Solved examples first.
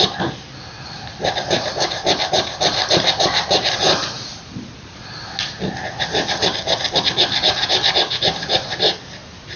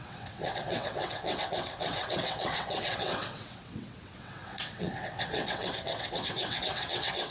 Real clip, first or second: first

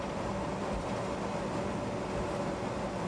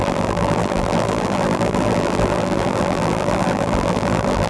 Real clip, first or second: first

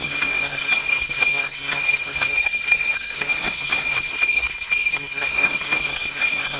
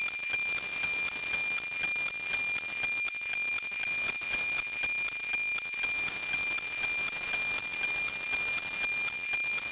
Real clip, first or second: second